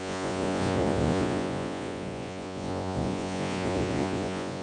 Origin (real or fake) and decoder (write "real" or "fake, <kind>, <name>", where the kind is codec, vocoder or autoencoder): fake, vocoder, Vocos